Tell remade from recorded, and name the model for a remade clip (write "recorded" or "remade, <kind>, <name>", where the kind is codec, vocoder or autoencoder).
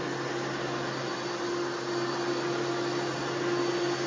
recorded